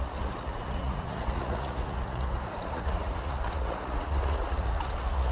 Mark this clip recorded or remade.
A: remade